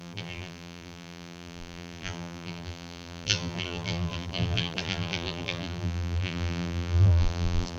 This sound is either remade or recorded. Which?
remade